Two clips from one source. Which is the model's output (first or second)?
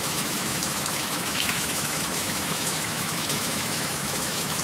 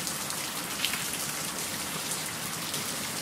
first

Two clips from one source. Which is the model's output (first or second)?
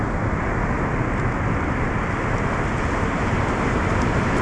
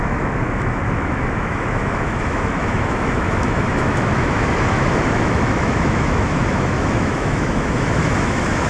second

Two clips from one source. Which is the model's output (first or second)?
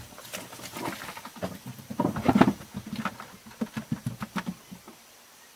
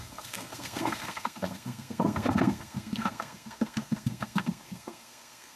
second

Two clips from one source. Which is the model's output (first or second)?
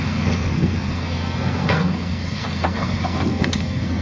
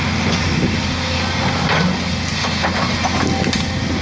first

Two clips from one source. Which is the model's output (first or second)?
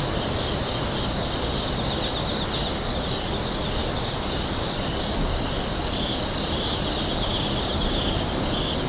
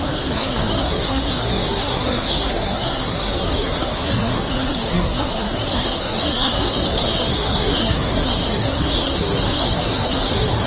second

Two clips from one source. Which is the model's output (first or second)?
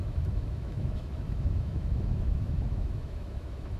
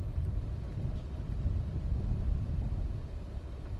first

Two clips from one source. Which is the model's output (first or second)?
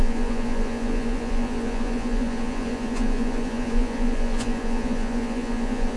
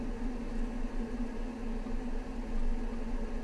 first